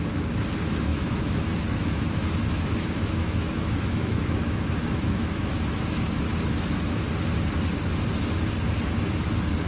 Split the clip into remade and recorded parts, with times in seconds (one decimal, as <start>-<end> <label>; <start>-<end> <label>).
0.0-0.9 recorded; 0.9-5.9 remade; 5.9-9.7 recorded